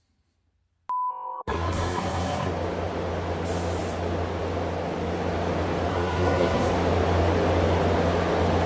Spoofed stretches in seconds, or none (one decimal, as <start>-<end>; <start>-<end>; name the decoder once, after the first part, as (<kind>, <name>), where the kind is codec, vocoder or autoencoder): 1.1-2.5 (codec, SNAC); 5.9-6.7